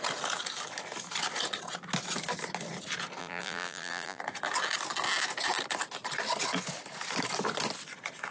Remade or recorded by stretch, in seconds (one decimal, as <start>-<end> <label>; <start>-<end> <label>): 0.0-3.2 recorded; 3.2-4.2 remade; 4.2-8.3 recorded